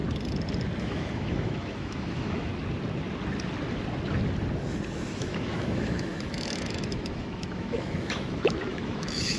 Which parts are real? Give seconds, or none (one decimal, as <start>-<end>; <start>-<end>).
0.0-0.8; 2.5-5.1